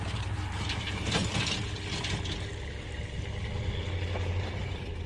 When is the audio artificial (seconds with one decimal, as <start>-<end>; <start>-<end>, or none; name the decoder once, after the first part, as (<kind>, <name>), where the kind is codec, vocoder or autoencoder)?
0.0-1.2 (vocoder, BigVGAN v2); 4.3-5.1